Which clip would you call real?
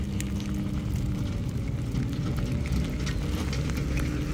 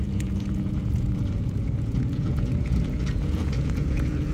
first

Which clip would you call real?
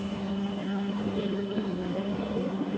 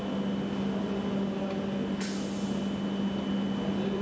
second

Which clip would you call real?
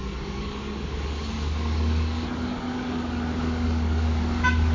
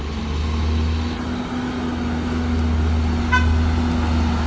second